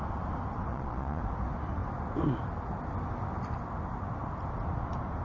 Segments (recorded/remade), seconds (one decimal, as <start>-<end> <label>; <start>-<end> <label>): 0.0-0.7 recorded; 0.7-1.2 remade; 1.2-5.2 recorded

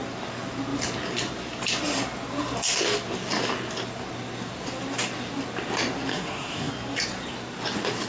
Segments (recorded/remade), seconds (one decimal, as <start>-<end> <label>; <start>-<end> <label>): 0.0-6.1 recorded; 6.1-6.7 remade; 6.7-8.1 recorded

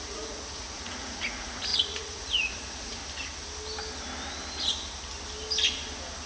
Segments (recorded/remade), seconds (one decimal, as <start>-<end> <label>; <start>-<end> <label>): 0.0-3.0 remade; 3.0-6.3 recorded

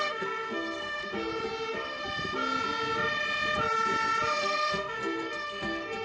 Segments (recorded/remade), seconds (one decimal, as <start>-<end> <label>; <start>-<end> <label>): 0.0-1.0 remade; 1.0-4.4 recorded; 4.4-6.0 remade

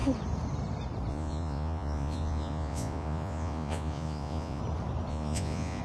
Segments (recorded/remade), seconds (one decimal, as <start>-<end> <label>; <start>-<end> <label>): 0.0-1.1 recorded; 1.1-4.6 remade; 4.6-5.1 recorded; 5.1-5.8 remade